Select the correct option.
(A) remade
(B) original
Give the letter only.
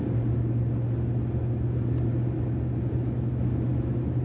B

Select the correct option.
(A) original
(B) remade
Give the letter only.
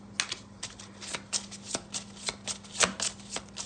A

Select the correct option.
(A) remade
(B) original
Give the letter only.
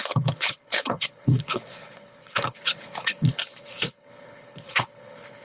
A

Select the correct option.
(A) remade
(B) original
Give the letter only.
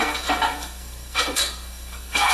A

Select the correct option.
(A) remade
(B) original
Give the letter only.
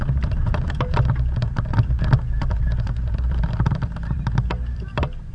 A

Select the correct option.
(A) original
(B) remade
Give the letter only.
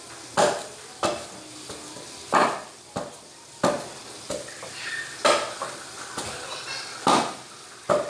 A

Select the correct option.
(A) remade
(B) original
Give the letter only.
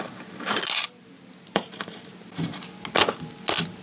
B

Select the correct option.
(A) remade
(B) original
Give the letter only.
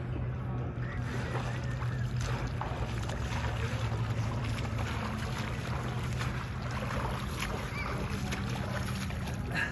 B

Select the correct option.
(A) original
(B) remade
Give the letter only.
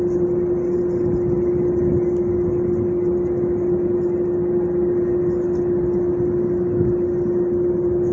A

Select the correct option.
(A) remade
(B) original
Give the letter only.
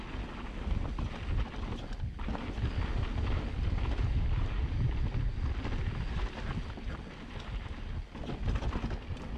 B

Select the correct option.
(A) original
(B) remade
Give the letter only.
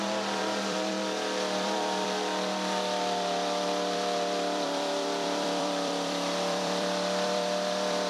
B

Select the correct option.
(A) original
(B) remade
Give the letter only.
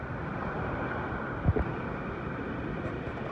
A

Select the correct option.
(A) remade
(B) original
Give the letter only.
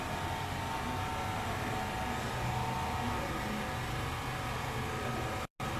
B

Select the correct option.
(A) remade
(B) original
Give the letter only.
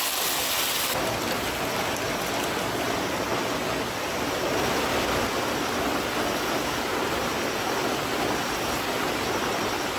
B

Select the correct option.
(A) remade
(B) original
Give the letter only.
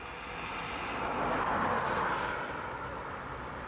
B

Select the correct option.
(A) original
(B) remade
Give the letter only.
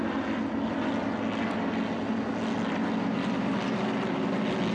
A